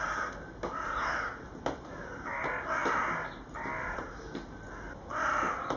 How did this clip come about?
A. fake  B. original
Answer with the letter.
B